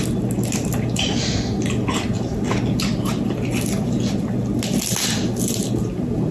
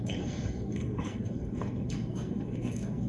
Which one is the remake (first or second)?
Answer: second